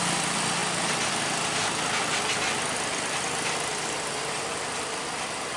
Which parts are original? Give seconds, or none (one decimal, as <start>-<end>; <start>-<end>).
0.0-5.6